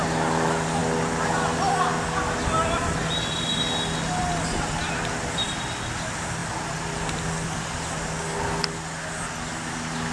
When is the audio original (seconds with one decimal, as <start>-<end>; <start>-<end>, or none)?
0.0-10.1